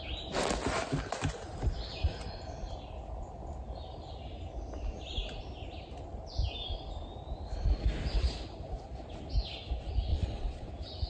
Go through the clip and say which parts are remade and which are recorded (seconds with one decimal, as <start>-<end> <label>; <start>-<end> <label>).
0.0-10.1 recorded; 10.1-10.7 remade; 10.7-11.1 recorded